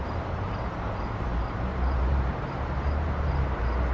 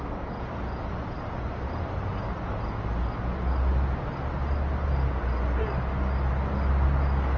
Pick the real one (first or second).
second